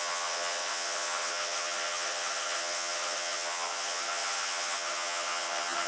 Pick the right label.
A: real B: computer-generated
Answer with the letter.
B